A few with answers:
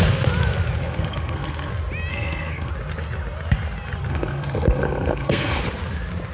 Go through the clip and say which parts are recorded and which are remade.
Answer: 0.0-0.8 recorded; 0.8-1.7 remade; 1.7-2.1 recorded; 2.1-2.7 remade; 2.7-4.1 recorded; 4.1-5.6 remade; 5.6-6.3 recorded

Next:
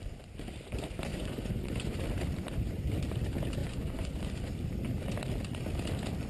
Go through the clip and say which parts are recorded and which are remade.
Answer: 0.0-1.1 recorded; 1.1-2.0 remade; 2.0-3.6 recorded; 3.6-4.5 remade; 4.5-6.3 recorded